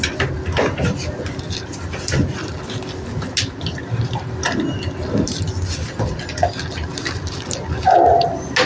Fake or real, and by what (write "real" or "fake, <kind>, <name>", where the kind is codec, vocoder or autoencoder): real